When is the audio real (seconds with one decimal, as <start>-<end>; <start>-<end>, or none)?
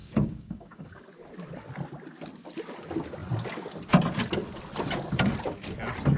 1.0-6.2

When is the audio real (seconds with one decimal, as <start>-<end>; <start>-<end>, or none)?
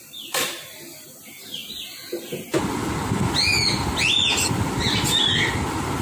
0.0-6.0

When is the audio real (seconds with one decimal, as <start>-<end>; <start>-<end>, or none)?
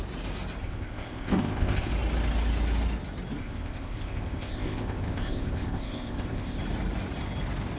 0.0-0.6; 1.9-3.4; 6.6-7.8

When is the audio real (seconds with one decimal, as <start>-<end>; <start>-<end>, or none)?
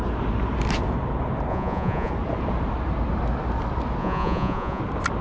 0.0-1.5; 2.1-4.0; 4.8-5.2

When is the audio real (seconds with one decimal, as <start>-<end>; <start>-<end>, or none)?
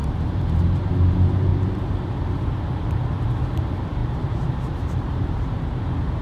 0.9-4.0; 5.8-6.2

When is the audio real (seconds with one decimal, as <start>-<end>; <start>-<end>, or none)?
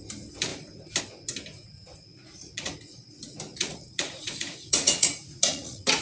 0.0-2.1; 2.7-3.5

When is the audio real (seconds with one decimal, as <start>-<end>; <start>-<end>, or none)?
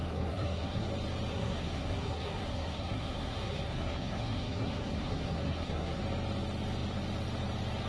0.9-1.3; 6.0-7.9